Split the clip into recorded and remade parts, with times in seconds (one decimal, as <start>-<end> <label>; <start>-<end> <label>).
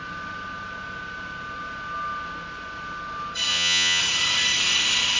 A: 0.0-3.5 recorded; 3.5-4.0 remade; 4.0-5.2 recorded